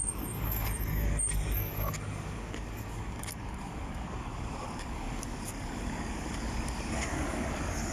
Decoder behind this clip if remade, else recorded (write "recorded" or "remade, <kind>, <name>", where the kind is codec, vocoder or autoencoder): remade, codec, DAC